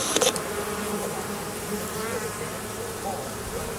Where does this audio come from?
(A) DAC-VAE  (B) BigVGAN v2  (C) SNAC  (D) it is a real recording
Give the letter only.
B